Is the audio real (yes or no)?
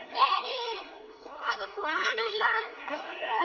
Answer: no